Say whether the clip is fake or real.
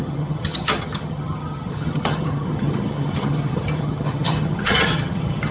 fake